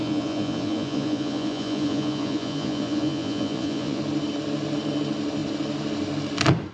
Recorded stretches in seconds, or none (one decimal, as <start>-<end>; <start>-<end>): 4.0-6.7